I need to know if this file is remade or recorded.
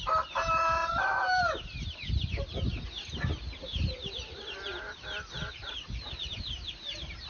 recorded